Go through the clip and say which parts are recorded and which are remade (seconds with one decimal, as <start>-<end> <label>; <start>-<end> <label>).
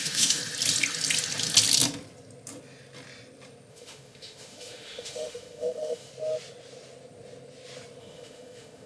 0.0-0.4 remade; 0.4-3.7 recorded; 3.7-6.1 remade; 6.1-8.0 recorded; 8.0-8.9 remade